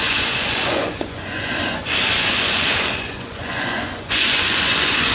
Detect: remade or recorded remade